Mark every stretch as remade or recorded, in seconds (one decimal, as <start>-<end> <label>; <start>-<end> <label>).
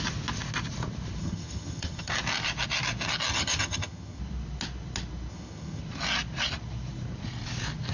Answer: 0.0-1.2 recorded; 1.2-2.1 remade; 2.1-3.3 recorded; 3.3-4.2 remade; 4.2-5.3 recorded; 5.3-5.8 remade; 5.8-7.9 recorded